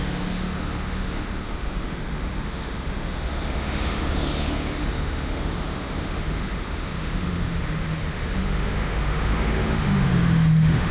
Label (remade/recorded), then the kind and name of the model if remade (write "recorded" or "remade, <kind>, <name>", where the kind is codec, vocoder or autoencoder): remade, autoencoder, DAC-VAE